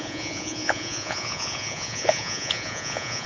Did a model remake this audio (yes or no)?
yes